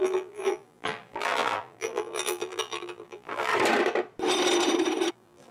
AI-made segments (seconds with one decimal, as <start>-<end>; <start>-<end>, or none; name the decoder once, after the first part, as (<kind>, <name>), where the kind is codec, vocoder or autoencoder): 0.0-3.5 (vocoder, BigVGAN v2); 5.1-5.5